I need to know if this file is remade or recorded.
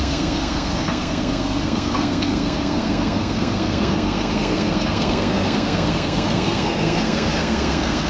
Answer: remade